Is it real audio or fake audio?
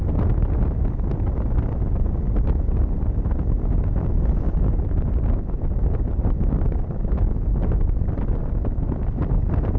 real